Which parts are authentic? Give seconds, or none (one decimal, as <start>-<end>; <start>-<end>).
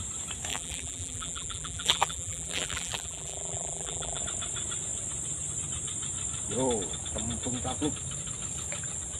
0.0-0.5; 4.2-9.2